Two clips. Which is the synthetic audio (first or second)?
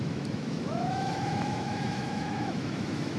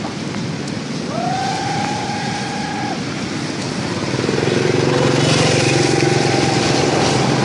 first